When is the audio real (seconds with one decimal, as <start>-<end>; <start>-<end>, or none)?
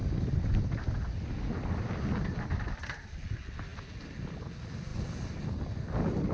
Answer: 0.0-6.3